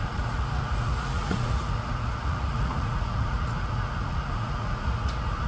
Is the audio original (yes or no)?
no